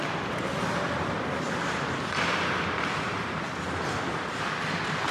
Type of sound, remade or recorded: recorded